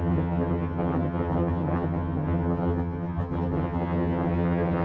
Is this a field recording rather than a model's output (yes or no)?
no